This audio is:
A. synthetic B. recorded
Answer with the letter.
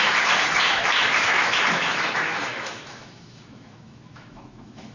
A